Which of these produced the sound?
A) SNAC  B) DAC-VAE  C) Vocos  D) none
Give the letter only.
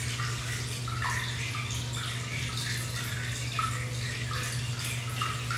D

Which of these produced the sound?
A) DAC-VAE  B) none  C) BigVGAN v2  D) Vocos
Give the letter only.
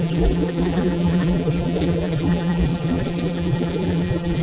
C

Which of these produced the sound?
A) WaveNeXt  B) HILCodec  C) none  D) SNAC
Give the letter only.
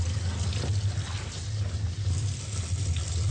C